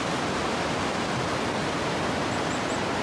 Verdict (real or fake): real